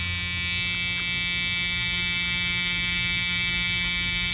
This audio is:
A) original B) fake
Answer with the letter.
A